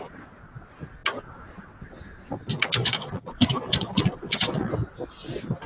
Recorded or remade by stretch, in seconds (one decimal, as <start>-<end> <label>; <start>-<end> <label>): 0.0-2.8 recorded; 2.8-4.7 remade; 4.7-5.7 recorded